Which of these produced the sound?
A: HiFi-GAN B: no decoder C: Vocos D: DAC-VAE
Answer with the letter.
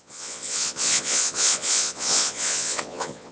C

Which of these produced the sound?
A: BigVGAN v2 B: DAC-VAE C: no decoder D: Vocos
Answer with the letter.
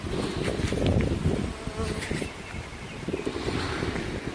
C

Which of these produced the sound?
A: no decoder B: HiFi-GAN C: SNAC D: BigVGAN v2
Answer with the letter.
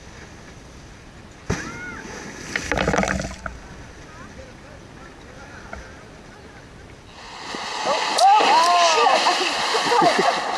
A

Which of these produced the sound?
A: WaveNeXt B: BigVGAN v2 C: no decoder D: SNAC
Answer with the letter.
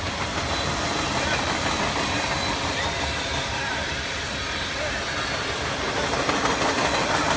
C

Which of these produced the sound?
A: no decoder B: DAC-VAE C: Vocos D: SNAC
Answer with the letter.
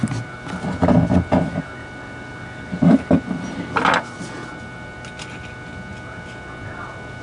A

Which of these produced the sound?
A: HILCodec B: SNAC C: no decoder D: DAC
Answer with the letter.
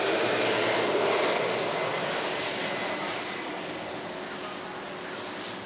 C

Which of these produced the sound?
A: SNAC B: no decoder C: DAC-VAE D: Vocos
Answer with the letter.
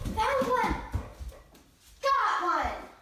B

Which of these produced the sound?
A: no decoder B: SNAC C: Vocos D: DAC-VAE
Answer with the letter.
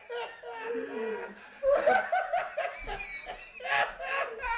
A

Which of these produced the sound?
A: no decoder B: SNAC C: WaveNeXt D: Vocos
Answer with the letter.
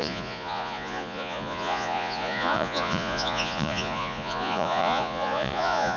D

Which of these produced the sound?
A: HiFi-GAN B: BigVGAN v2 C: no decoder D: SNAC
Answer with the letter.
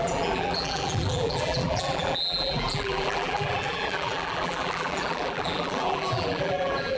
B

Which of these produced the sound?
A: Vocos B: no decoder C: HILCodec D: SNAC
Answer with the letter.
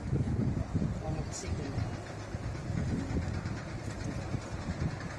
B